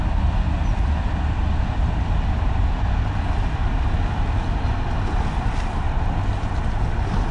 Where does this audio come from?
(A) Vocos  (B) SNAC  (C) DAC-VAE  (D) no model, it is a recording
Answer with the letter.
D